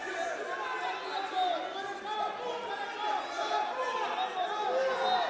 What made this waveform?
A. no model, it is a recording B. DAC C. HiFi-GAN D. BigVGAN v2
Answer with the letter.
A